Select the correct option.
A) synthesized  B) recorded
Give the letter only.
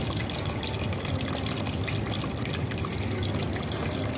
B